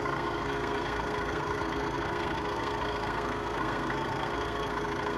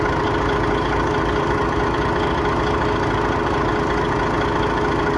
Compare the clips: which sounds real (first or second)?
second